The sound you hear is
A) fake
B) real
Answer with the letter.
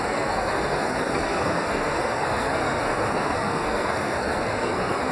A